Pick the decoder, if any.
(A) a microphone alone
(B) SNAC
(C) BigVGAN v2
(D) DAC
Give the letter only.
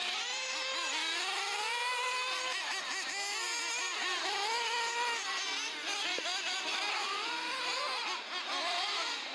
A